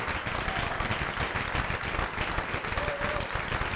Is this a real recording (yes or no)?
yes